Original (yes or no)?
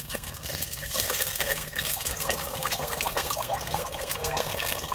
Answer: no